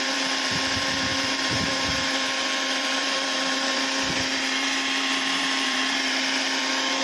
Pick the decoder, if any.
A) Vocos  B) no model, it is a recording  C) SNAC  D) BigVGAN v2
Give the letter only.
D